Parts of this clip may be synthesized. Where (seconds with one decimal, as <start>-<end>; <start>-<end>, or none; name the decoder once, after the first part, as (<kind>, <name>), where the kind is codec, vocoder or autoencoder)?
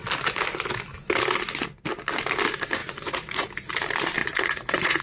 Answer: 2.8-3.5 (vocoder, Vocos); 4.2-5.0